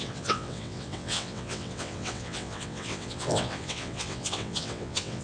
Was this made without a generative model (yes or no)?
no